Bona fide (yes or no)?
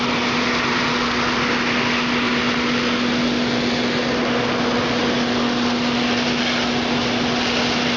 yes